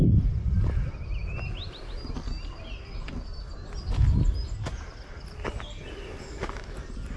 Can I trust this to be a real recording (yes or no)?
yes